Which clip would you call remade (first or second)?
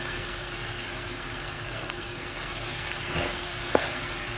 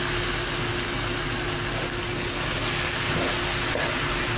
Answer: first